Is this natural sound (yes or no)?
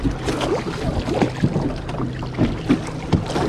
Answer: yes